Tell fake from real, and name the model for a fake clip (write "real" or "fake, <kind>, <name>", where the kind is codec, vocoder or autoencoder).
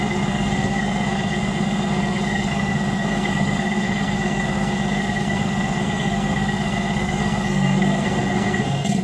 fake, codec, SNAC